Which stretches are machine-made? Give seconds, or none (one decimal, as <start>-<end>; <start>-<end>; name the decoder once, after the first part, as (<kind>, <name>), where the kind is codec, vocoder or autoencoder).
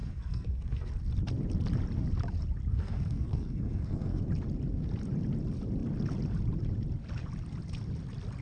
0.0-0.9 (codec, SNAC); 2.7-4.2